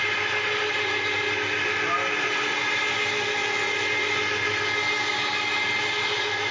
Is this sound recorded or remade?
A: recorded